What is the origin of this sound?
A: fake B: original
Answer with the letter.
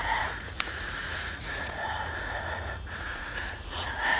A